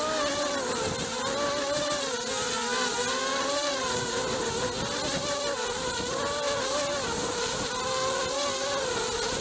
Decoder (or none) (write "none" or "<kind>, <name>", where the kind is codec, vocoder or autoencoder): none